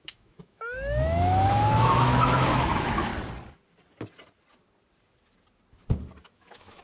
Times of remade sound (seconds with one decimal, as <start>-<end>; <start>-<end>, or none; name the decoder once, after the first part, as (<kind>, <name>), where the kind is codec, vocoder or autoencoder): 0.0-3.1 (autoencoder, DAC-VAE); 6.2-6.8